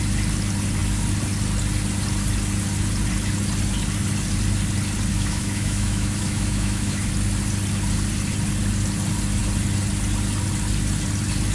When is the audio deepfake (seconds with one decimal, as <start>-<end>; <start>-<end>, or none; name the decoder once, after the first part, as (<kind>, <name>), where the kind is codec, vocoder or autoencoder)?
5.1-7.1 (autoencoder, DAC-VAE)